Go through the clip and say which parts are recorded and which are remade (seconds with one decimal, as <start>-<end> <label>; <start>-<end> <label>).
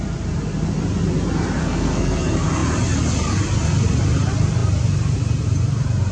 0.0-1.6 recorded; 1.6-2.2 remade; 2.2-6.1 recorded